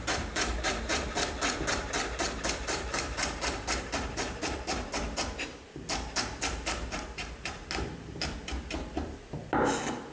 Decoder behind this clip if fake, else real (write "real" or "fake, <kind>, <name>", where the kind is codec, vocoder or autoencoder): real